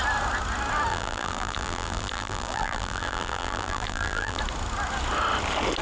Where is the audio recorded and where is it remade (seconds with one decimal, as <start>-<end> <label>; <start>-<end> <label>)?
0.0-0.9 recorded; 0.9-4.4 remade; 4.4-5.8 recorded